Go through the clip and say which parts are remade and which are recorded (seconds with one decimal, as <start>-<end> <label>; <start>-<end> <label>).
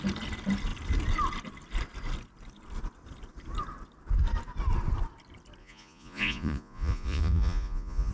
0.0-5.6 recorded; 5.6-8.1 remade